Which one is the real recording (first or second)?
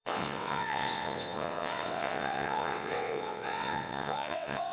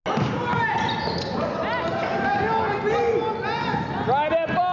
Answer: second